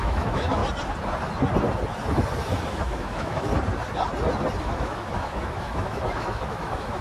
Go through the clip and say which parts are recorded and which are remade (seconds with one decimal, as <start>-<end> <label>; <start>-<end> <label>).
0.0-0.6 remade; 0.6-2.7 recorded; 2.7-3.5 remade; 3.5-4.6 recorded; 4.6-7.0 remade